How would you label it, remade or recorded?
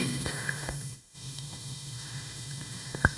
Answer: remade